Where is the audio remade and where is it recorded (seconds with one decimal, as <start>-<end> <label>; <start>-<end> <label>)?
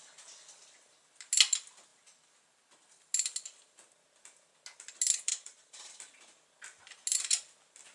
0.0-5.3 recorded; 5.3-6.0 remade; 6.0-7.9 recorded